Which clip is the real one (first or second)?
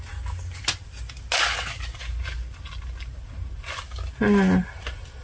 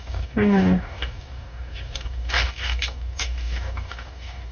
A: first